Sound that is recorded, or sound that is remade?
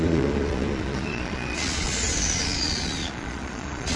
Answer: remade